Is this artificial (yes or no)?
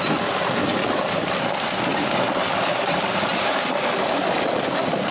no